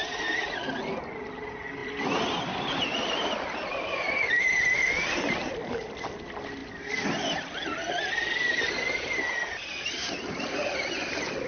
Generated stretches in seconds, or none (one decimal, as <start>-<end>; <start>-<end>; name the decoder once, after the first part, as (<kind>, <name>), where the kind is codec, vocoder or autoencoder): 1.8-4.9 (vocoder, BigVGAN v2)